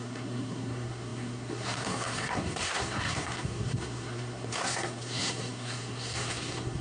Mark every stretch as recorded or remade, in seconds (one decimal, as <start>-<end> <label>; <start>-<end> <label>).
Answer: 0.0-6.8 remade